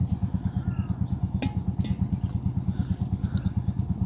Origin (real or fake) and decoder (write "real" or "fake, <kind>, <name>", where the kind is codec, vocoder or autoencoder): real